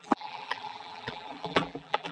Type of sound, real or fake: fake